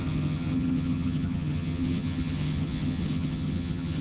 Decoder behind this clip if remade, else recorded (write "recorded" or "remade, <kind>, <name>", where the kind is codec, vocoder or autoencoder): remade, vocoder, HiFi-GAN